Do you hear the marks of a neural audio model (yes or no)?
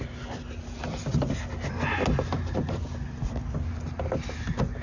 no